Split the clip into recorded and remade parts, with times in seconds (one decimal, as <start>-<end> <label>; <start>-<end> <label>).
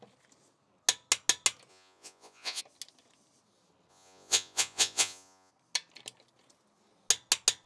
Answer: 0.0-1.7 recorded; 1.7-2.6 remade; 2.6-3.9 recorded; 3.9-5.5 remade; 5.5-7.7 recorded